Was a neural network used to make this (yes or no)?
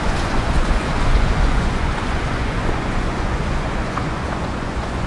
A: yes